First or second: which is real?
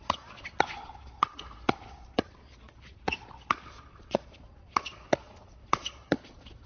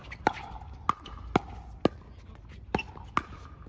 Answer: second